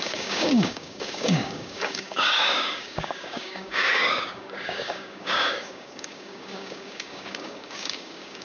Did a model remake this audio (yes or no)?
yes